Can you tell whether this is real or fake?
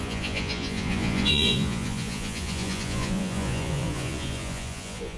fake